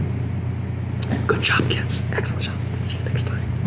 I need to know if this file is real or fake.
real